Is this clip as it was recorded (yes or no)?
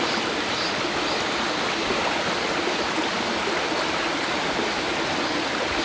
yes